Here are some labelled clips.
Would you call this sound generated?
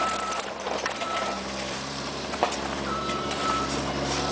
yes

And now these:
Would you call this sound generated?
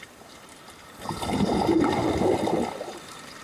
yes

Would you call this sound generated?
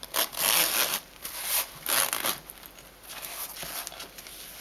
no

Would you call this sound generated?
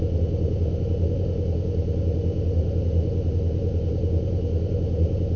no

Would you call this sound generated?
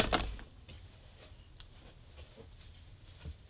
no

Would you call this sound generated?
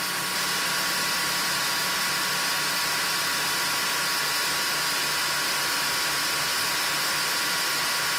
no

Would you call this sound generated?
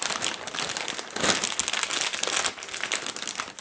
no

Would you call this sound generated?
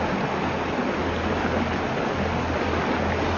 no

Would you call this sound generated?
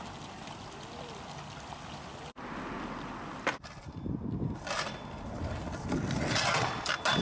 no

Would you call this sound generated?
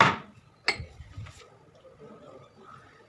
no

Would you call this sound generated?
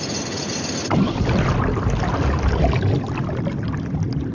no